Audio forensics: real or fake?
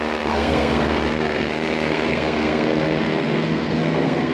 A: fake